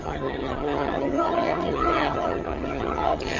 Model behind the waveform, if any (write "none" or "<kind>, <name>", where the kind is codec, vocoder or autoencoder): vocoder, HiFi-GAN